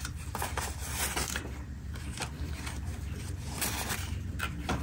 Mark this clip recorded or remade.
remade